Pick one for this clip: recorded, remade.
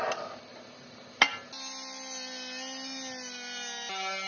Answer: recorded